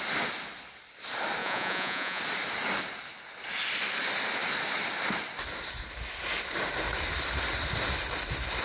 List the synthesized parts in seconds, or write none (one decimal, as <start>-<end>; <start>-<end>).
1.4-2.2

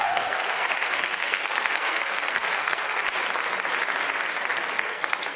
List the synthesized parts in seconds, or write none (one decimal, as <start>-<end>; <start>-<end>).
0.0-3.0; 4.7-5.4

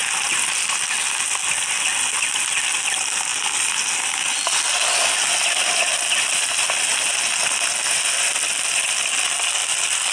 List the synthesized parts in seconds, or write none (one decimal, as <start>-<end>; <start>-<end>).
none